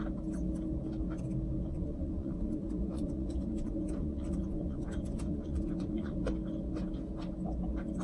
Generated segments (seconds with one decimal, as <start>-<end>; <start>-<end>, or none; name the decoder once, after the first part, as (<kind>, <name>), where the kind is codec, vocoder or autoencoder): 1.7-6.3 (vocoder, Vocos)